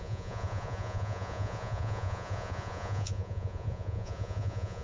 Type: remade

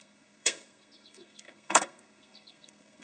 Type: remade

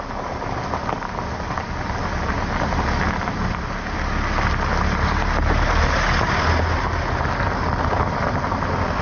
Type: recorded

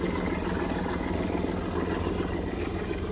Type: recorded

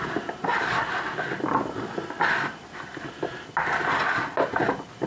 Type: recorded